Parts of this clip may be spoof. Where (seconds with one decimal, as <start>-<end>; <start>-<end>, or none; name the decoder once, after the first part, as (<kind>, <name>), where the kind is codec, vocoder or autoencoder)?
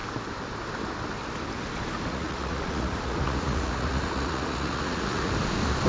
2.1-5.3 (vocoder, Vocos)